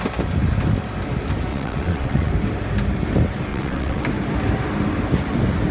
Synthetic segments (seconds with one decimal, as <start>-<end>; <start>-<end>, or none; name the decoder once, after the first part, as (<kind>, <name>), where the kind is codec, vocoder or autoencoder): 1.5-2.3 (vocoder, WaveNeXt); 3.5-4.0